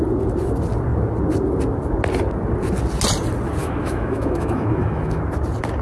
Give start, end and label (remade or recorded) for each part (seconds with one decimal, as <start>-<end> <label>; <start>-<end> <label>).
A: 0.0-3.6 recorded; 3.6-5.2 remade; 5.2-5.8 recorded